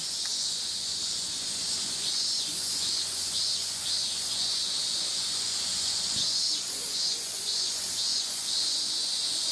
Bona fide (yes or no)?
no